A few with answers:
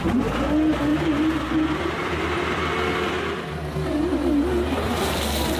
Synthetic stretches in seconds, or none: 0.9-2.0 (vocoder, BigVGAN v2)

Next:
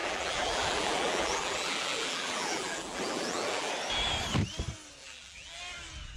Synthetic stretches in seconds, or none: 0.0-3.7 (vocoder, BigVGAN v2); 5.0-5.6

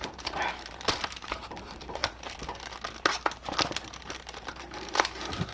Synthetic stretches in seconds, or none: 0.0-2.0 (vocoder, BigVGAN v2); 4.0-5.5

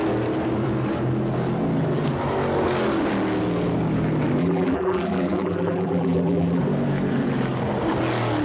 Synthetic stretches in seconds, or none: 4.4-6.6 (vocoder, BigVGAN v2)